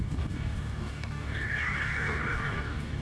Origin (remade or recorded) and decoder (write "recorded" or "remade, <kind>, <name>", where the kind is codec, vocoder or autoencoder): remade, codec, DAC